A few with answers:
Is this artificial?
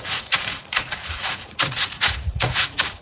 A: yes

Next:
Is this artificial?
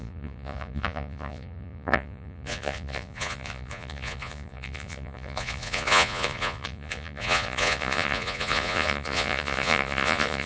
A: yes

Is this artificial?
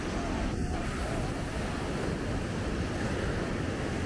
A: no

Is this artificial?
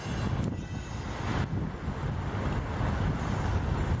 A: no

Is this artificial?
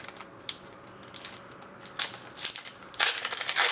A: no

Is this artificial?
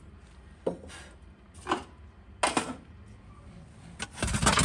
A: no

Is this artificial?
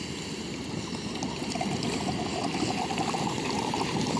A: no